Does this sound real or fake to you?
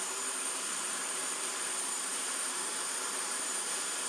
fake